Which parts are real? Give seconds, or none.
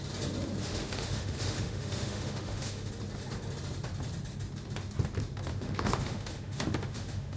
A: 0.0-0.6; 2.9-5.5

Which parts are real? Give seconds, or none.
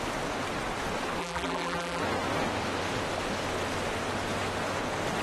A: 0.0-1.2; 2.0-5.2